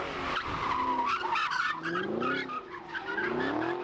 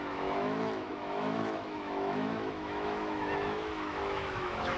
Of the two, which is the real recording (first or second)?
first